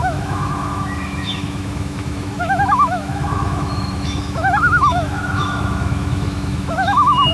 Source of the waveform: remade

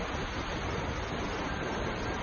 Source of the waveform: recorded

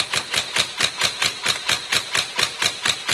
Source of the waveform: recorded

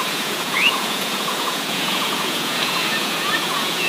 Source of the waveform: remade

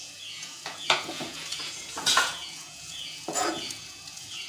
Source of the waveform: remade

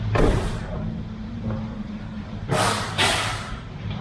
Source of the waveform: remade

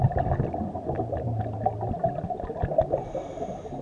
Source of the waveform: recorded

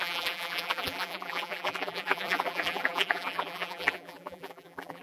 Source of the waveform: remade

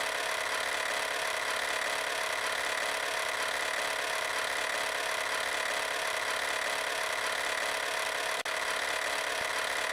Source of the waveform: recorded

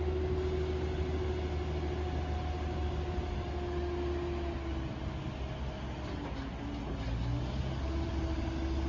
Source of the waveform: recorded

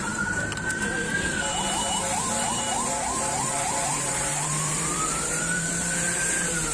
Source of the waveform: remade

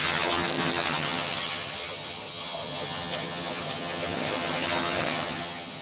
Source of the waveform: remade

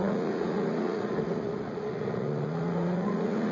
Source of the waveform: remade